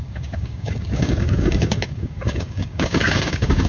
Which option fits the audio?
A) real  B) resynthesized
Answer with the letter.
B